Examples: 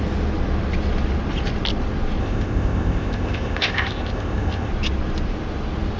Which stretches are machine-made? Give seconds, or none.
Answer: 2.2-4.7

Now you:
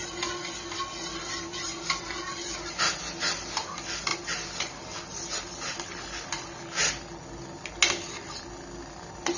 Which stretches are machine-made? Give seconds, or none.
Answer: none

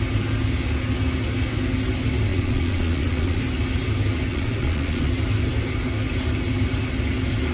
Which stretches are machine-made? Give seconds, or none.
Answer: 2.3-3.4; 4.3-5.1

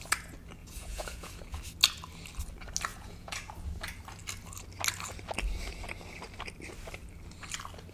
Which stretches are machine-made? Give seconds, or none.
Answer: 0.6-1.3; 2.9-3.5

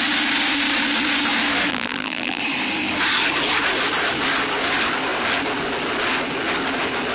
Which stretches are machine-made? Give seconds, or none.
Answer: 1.7-2.4